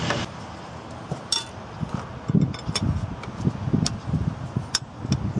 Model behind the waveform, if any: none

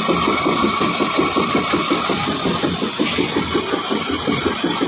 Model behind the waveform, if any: none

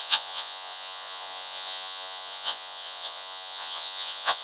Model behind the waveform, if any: vocoder, Vocos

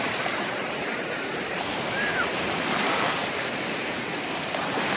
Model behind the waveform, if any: none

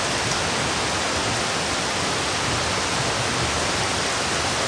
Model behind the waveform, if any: none